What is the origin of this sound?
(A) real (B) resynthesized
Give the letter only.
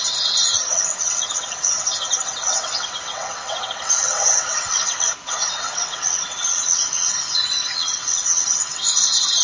B